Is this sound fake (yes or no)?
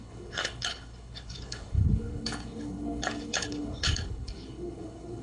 yes